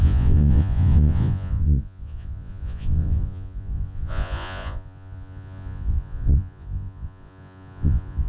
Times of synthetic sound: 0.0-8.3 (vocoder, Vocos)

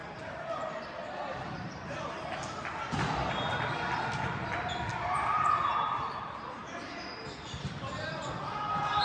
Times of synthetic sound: 0.0-3.3 (vocoder, BigVGAN v2)

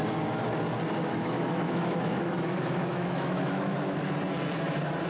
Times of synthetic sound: 1.0-4.1 (autoencoder, DAC-VAE)

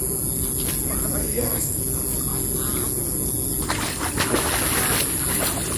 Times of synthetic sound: 1.2-1.8 (codec, SNAC)

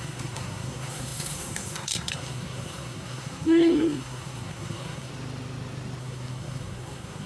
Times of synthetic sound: 0.0-5.1 (codec, SNAC); 6.0-7.3

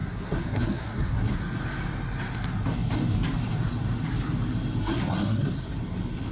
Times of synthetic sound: 0.0-1.4 (codec, SNAC); 4.8-5.5

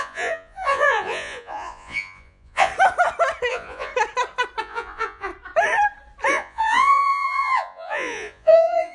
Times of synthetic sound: 0.0-2.7 (vocoder, Vocos); 3.5-3.9; 4.6-5.3; 6.3-8.9

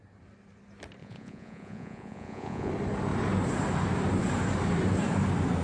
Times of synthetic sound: 1.0-2.7 (vocoder, Vocos)